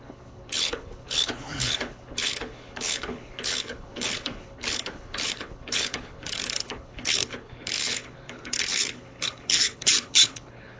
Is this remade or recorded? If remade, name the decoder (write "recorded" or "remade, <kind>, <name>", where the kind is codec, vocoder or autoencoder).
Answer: remade, codec, HILCodec